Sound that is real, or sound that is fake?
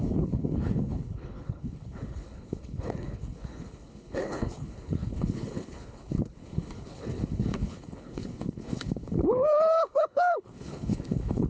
fake